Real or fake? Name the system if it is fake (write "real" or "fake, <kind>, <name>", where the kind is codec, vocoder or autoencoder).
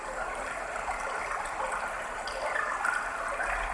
real